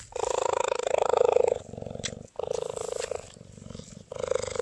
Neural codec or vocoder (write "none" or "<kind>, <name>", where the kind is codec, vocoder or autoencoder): none